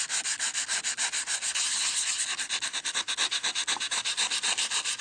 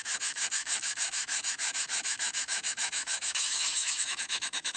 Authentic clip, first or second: first